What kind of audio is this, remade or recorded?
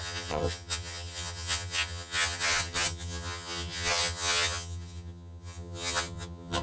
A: remade